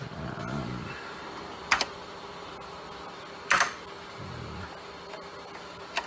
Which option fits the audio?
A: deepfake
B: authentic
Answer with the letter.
B